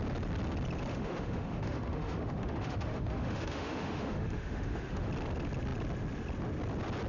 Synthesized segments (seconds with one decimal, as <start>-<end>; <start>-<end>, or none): 0.9-5.1